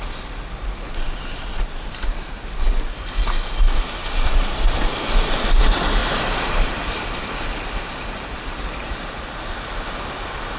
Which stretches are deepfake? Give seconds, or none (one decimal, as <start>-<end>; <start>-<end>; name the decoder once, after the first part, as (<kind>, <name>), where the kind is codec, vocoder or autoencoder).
1.5-2.6 (vocoder, BigVGAN v2); 4.0-5.6; 6.0-8.9